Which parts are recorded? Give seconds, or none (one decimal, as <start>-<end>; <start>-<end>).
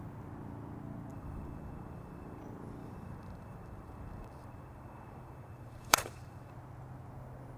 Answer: 0.0-1.1; 2.4-2.8; 6.5-7.6